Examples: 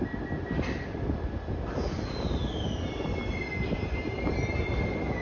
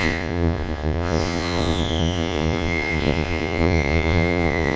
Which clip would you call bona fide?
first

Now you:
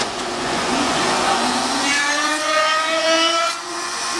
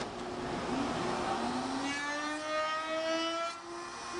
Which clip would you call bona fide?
second